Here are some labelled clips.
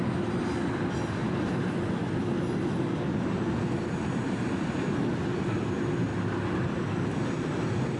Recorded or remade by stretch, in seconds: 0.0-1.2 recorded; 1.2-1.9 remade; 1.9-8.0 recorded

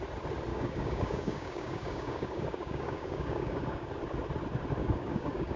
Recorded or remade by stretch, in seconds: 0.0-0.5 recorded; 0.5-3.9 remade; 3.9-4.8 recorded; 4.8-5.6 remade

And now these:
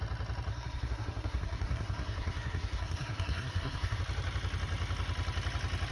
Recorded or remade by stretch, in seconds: 0.0-0.5 recorded; 0.5-4.0 remade; 4.0-5.9 recorded